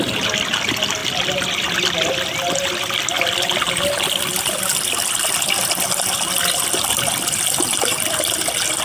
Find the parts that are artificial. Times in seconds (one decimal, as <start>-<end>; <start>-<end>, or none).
1.0-5.3